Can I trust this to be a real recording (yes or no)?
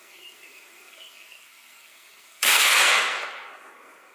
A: no